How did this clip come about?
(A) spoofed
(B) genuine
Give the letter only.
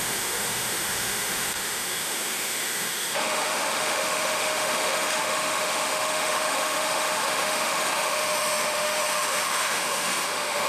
A